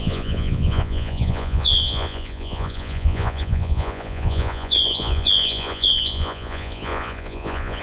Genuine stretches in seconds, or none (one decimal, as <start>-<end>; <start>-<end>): none